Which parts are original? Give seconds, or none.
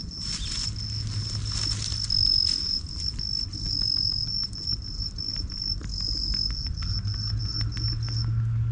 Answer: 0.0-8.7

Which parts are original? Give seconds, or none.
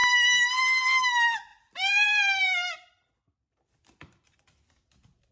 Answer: 0.0-1.5; 4.7-5.3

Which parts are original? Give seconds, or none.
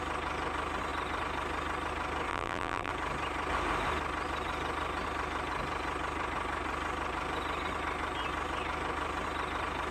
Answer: 0.0-2.3; 2.9-9.9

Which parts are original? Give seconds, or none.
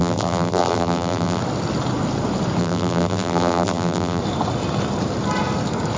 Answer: 1.4-2.6; 4.2-6.0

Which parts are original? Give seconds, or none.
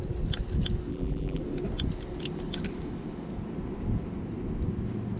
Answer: 0.0-0.9; 1.4-5.2